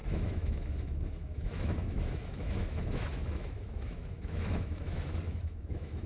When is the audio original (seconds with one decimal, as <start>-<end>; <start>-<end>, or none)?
none